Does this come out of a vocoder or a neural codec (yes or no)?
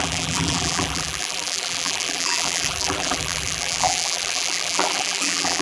yes